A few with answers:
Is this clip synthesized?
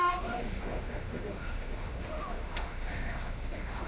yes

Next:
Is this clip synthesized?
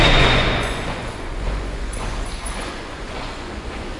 yes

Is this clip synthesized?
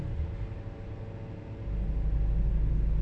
no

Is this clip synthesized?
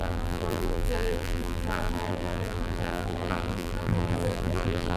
yes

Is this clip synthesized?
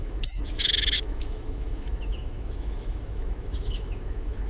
yes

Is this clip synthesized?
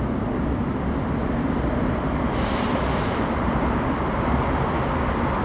yes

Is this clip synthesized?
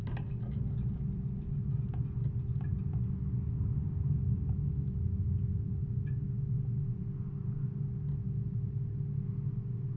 no